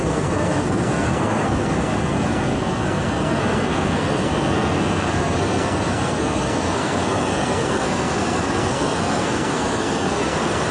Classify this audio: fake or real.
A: fake